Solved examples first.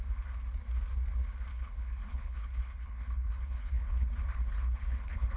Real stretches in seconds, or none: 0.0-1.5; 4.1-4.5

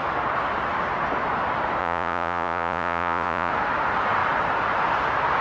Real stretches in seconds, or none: 0.0-1.8; 3.5-5.4

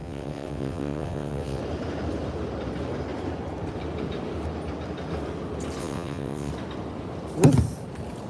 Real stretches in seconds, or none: 1.6-5.8; 6.5-8.3